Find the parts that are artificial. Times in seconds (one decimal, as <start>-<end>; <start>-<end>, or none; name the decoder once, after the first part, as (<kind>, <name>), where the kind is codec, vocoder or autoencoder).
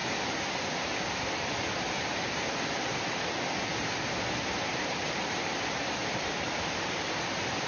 none